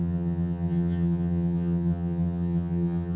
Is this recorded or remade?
remade